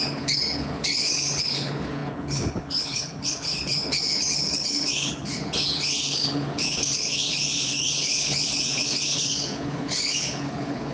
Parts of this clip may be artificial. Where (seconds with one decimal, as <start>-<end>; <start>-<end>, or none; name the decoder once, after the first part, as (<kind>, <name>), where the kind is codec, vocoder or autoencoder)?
0.0-10.9 (codec, HILCodec)